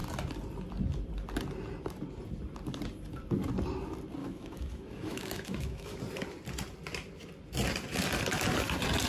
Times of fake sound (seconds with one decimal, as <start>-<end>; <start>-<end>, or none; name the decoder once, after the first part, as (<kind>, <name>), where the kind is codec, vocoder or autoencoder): 4.2-6.0 (autoencoder, DAC-VAE)